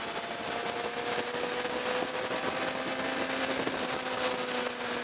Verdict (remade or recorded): recorded